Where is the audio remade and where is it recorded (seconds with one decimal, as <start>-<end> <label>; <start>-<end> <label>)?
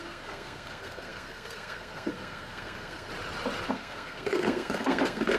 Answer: 0.0-3.1 remade; 3.1-3.7 recorded; 3.7-5.4 remade